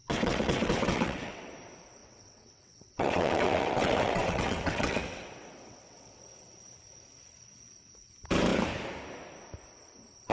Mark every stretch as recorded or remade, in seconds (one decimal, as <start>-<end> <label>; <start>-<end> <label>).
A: 0.0-1.5 remade; 1.5-2.0 recorded; 2.0-6.2 remade; 6.2-10.3 recorded